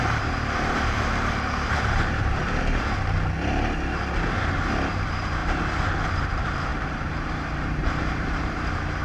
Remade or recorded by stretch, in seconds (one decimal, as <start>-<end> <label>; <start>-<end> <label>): 0.0-2.4 remade; 2.4-4.9 recorded; 4.9-5.4 remade; 5.4-6.2 recorded; 6.2-9.0 remade